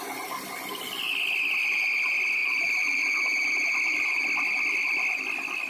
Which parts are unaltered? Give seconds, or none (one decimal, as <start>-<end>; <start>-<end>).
0.0-2.4; 3.0-3.9